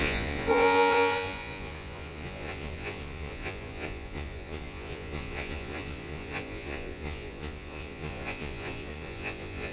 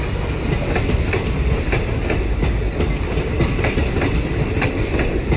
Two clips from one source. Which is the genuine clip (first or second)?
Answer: second